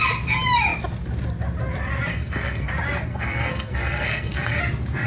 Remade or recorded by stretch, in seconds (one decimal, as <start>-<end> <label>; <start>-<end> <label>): 0.0-2.1 recorded; 2.1-2.7 remade; 2.7-3.1 recorded; 3.1-4.6 remade; 4.6-5.1 recorded